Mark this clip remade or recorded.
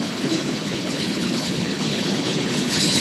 remade